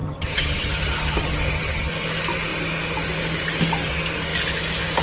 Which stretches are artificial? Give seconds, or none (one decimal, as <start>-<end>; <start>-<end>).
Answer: 0.0-1.9